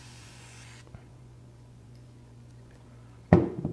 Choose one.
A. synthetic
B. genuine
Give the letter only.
A